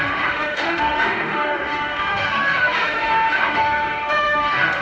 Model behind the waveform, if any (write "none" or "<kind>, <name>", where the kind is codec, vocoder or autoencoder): autoencoder, DAC-VAE